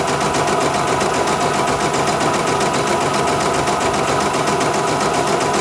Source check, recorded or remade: recorded